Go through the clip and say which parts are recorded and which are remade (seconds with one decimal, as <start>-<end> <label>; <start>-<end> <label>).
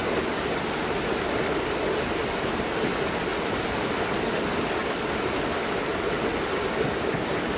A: 0.0-3.3 recorded; 3.3-4.2 remade; 4.2-7.6 recorded